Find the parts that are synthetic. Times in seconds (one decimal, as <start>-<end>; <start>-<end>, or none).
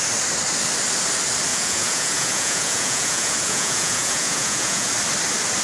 1.5-4.9